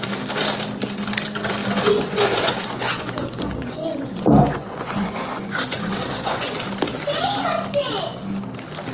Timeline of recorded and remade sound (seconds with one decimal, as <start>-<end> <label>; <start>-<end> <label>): 0.0-1.6 recorded; 1.6-6.6 remade; 6.6-8.9 recorded